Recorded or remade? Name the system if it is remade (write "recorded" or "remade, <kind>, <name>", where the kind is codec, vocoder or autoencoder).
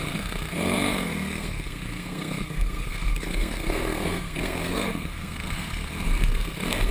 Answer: remade, codec, SNAC